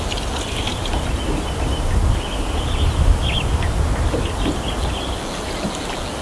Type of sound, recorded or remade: recorded